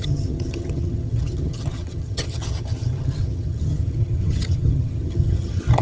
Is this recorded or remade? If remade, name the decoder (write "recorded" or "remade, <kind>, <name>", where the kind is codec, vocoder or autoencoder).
remade, vocoder, HiFi-GAN